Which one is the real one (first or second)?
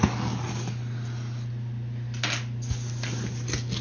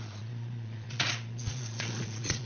first